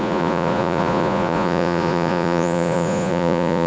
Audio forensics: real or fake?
fake